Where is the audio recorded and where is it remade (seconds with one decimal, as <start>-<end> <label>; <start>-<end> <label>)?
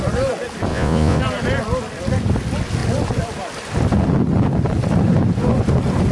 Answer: 0.0-0.7 recorded; 0.7-1.2 remade; 1.2-6.1 recorded